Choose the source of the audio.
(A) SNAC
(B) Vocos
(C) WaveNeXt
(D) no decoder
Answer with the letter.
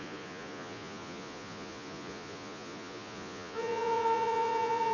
B